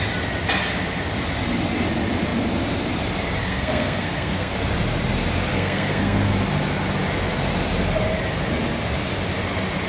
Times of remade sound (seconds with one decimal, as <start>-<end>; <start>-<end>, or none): 3.4-4.5; 5.5-6.3